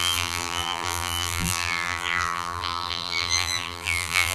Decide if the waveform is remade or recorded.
remade